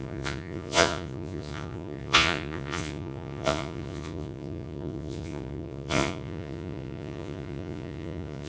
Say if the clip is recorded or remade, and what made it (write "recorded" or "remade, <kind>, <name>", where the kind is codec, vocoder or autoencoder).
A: remade, vocoder, Vocos